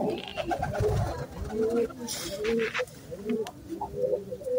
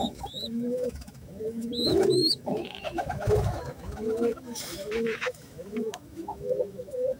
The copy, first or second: second